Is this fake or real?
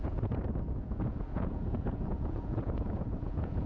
fake